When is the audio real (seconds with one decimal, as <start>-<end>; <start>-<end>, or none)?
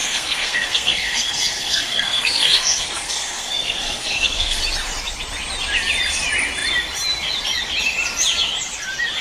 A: 4.6-9.2